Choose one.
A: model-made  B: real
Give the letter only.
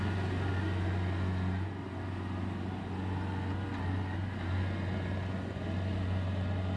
B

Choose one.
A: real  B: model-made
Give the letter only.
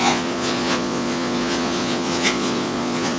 B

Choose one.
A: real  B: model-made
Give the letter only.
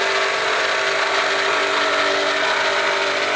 A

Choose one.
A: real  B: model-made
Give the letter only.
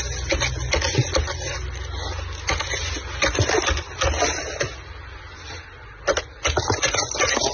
A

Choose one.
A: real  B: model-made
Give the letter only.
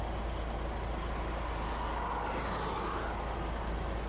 A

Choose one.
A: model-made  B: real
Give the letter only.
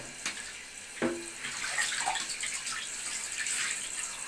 B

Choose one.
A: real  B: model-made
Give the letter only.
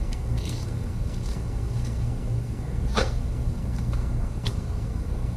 B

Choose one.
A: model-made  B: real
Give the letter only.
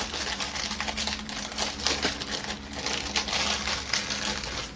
B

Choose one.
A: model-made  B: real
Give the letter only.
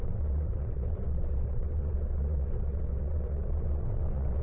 A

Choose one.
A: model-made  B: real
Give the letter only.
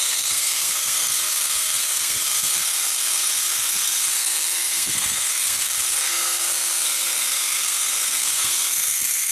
A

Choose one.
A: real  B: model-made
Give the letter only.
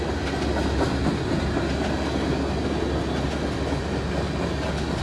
A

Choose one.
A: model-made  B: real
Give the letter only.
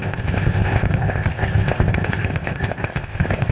A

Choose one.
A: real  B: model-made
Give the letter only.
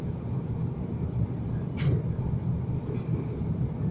A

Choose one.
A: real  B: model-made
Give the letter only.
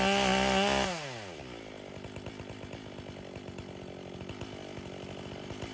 A